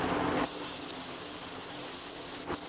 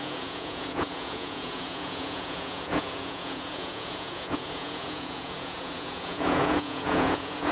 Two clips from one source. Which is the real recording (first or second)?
first